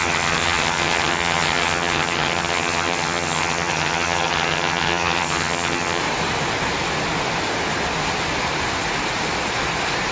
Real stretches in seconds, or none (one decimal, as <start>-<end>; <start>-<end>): 6.0-10.1